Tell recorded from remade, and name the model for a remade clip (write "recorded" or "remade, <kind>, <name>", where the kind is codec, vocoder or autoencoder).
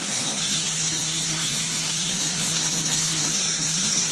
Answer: remade, codec, SNAC